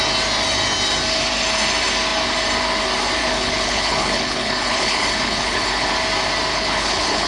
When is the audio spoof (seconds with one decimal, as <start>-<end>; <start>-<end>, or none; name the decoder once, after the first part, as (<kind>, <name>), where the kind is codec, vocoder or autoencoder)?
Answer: 3.2-5.9 (codec, HILCodec); 6.5-7.3